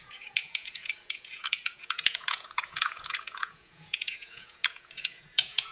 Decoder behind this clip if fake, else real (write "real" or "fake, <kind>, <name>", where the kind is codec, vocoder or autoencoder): fake, vocoder, Vocos